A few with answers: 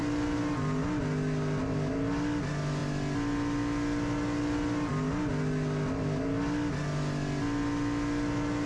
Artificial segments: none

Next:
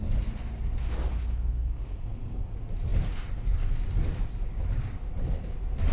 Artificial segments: 0.8-2.5 (codec, SNAC)

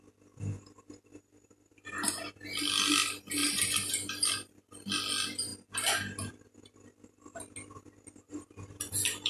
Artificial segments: none

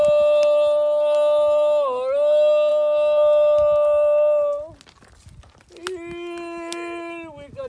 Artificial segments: none